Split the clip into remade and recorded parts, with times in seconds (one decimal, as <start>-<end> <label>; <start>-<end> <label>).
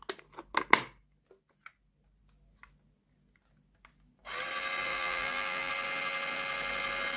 0.0-4.9 recorded; 4.9-5.7 remade; 5.7-7.2 recorded